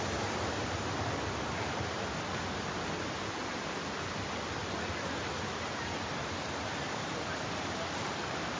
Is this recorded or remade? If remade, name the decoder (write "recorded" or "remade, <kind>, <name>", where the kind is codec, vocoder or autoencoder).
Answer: recorded